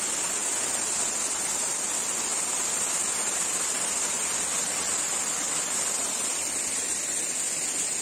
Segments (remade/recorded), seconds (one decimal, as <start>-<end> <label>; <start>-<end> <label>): 0.0-8.0 recorded